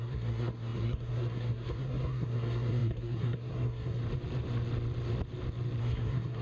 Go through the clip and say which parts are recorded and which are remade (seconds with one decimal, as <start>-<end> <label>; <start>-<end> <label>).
0.0-4.0 remade; 4.0-5.8 recorded; 5.8-6.4 remade